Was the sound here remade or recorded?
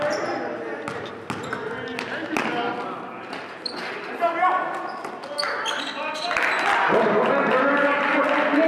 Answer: recorded